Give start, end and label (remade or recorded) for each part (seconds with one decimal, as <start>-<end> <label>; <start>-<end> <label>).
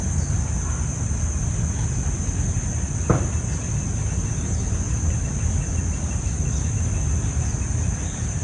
0.0-8.4 recorded